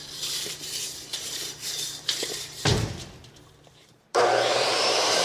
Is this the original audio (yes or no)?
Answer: no